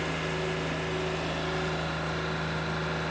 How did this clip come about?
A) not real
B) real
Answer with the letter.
B